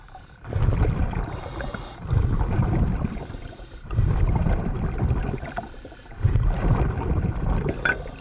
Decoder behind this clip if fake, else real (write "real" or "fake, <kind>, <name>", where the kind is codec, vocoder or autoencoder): fake, vocoder, BigVGAN v2